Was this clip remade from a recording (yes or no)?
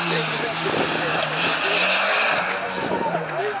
no